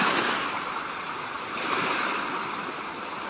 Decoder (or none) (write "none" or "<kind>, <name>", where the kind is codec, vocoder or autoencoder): none